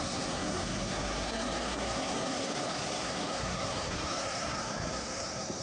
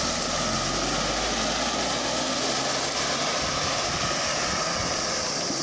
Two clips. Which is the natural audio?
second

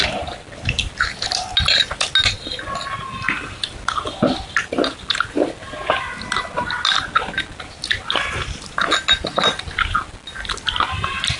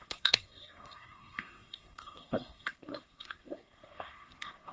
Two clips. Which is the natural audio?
first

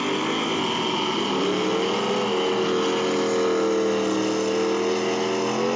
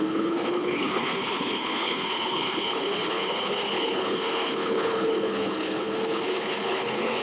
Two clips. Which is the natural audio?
first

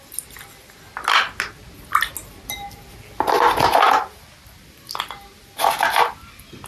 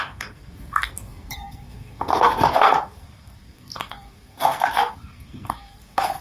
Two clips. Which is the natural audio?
first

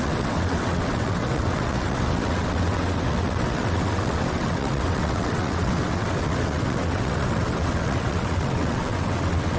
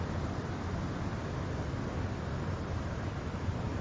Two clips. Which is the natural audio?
second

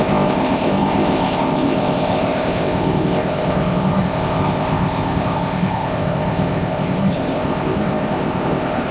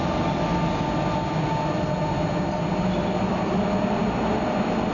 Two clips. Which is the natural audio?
second